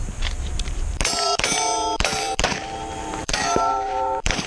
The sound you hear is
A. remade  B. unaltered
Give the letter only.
A